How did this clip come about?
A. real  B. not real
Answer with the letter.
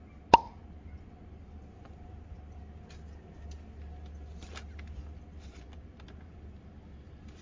A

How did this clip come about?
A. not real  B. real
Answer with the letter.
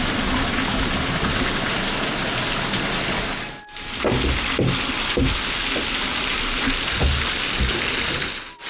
B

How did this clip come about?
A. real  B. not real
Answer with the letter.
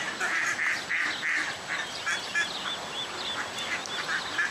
A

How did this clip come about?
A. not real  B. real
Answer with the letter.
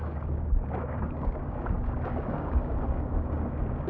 A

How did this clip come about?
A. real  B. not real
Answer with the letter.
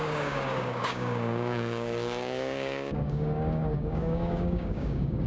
B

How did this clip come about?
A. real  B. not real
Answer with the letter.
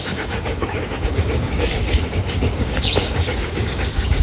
B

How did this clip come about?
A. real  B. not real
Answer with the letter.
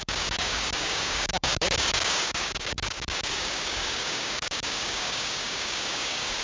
B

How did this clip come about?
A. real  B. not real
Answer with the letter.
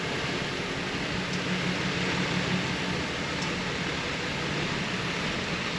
A